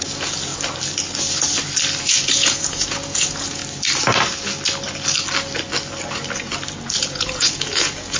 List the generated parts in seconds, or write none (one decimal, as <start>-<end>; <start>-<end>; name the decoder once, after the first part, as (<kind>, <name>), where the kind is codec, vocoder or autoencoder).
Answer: 0.0-0.5 (vocoder, Vocos); 2.0-3.6; 7.0-8.2